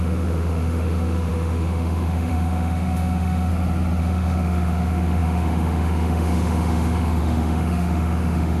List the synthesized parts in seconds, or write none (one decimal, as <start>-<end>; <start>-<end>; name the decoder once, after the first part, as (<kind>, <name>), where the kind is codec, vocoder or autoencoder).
0.0-3.5 (autoencoder, DAC-VAE); 4.0-8.6